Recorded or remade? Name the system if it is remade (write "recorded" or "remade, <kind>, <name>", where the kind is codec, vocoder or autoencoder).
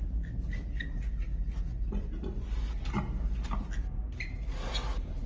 recorded